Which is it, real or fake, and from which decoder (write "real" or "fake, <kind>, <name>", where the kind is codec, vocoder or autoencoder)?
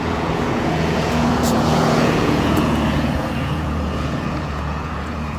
fake, vocoder, Vocos